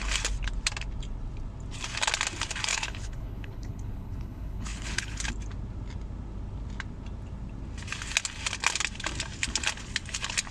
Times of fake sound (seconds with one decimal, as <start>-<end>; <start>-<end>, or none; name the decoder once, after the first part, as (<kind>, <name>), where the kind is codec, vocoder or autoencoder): 2.7-5.3 (codec, HILCodec)